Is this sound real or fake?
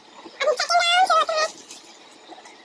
real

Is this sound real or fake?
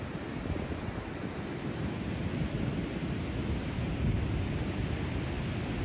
real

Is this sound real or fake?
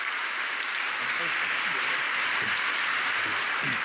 fake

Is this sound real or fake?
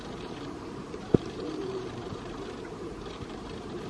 fake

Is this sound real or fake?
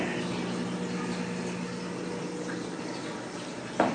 real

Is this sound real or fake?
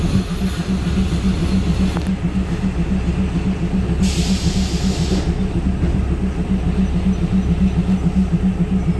real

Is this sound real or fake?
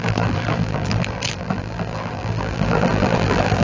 fake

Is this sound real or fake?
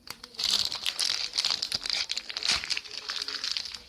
fake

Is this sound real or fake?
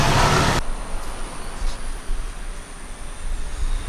real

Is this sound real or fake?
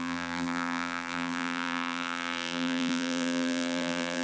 fake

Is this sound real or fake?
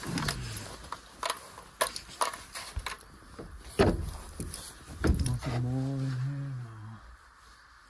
real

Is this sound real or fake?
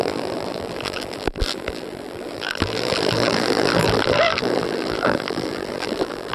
fake